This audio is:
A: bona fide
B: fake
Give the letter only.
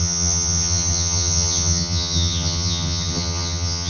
B